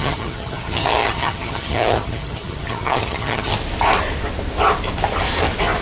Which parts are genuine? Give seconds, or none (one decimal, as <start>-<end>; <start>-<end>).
3.5-5.8